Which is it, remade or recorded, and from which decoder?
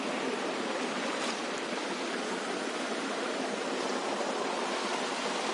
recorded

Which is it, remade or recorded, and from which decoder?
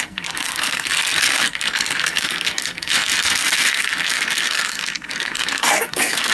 remade, codec, SNAC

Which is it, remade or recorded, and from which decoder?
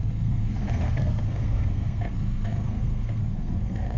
remade, codec, SNAC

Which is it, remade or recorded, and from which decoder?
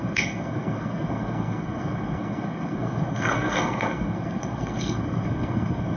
remade, codec, SNAC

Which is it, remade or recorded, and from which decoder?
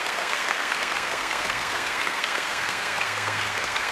remade, codec, SNAC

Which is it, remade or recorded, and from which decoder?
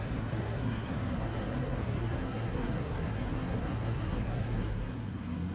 remade, codec, SNAC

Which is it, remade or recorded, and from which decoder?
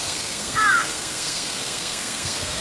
remade, codec, SNAC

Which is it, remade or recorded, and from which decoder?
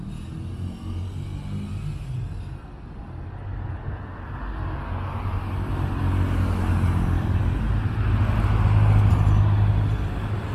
recorded